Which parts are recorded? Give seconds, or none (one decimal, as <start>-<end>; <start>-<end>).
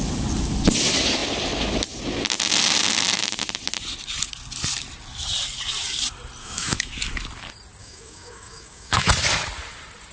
0.0-6.4; 6.9-7.8; 9.1-10.1